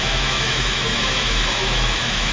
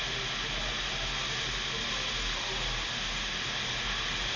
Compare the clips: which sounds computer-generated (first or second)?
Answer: first